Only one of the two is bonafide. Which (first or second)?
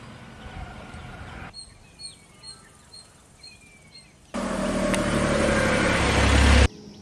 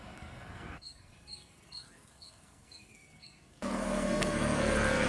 first